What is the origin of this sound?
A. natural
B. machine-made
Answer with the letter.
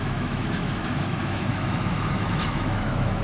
B